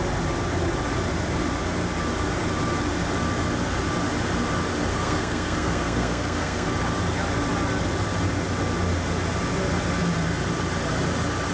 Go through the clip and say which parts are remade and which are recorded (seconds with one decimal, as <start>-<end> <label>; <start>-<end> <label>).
0.0-4.9 recorded; 4.9-6.7 remade; 6.7-11.5 recorded